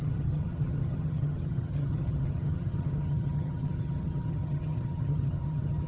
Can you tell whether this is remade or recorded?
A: remade